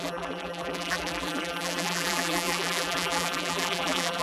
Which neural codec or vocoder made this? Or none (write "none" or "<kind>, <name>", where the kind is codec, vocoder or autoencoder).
vocoder, BigVGAN v2